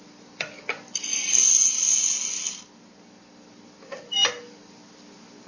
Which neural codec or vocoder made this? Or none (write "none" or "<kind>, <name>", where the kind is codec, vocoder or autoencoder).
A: none